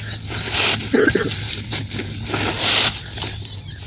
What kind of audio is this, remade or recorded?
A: recorded